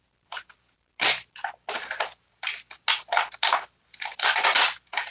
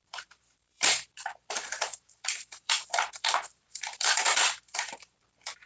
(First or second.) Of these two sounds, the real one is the first